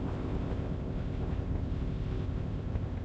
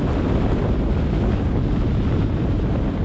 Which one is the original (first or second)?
second